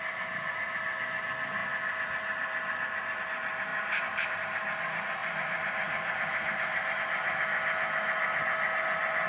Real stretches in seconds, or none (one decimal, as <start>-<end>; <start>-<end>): 0.0-3.7; 4.4-5.2; 7.0-9.3